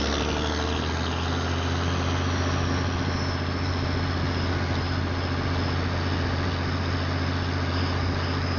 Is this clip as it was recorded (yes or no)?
yes